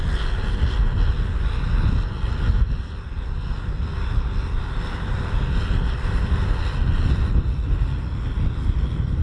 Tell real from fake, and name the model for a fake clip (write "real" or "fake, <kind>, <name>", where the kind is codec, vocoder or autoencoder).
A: real